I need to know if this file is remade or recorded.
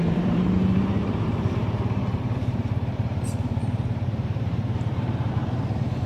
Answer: remade